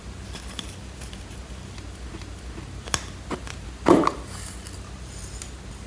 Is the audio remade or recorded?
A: recorded